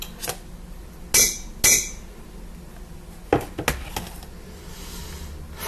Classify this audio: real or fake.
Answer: real